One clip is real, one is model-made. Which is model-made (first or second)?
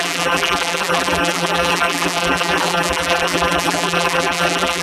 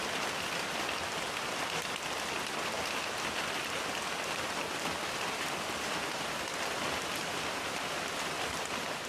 first